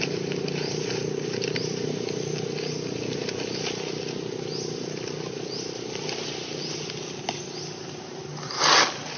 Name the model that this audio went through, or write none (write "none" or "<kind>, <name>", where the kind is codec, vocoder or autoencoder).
none